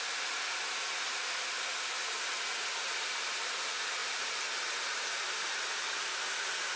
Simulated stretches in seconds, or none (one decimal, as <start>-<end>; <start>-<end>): 4.0-6.0